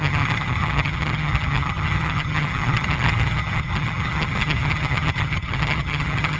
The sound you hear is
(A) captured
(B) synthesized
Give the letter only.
B